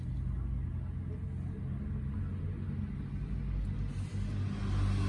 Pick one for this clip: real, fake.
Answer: real